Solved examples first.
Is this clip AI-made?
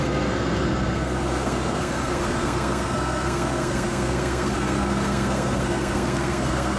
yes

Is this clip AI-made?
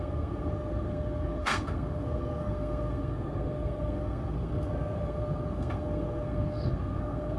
yes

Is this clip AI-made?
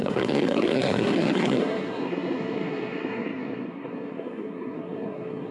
yes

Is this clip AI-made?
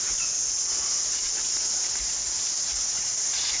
yes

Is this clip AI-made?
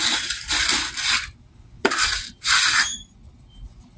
no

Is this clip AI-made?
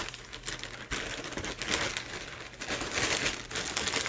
no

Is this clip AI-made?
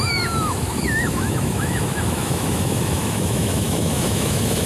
yes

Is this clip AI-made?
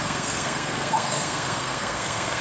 yes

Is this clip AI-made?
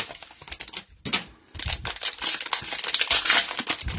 no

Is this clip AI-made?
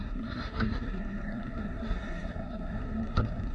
yes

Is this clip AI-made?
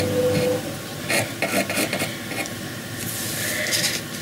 no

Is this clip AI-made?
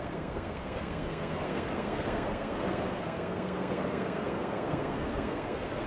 yes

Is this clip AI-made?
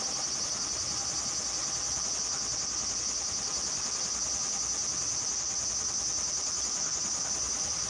no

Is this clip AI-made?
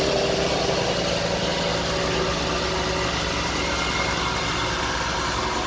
no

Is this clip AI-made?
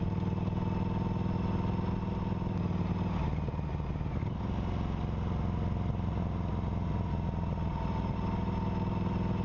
no